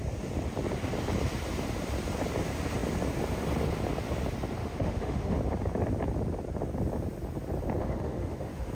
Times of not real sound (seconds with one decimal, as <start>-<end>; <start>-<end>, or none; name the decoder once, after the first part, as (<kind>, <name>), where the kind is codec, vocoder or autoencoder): 4.6-5.4 (autoencoder, DAC-VAE); 7.8-8.7